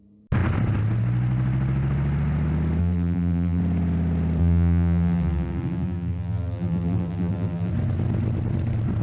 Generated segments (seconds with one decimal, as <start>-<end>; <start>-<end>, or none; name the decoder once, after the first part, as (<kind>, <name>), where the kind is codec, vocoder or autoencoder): 2.8-3.6 (vocoder, BigVGAN v2); 4.4-7.7